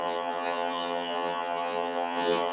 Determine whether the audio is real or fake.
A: fake